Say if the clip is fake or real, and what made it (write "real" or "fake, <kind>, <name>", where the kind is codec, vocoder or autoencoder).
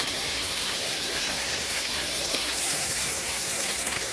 fake, codec, SNAC